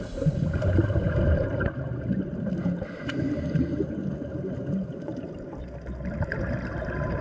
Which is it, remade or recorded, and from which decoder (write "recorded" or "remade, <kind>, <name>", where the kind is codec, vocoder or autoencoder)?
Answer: recorded